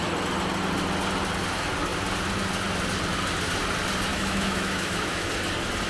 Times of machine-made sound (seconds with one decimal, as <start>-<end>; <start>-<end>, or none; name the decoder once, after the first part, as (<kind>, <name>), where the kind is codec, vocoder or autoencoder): 4.1-5.3 (autoencoder, DAC-VAE)